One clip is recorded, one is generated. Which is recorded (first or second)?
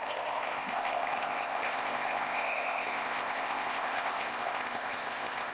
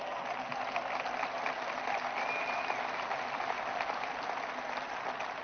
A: second